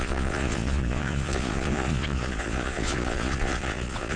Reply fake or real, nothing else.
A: fake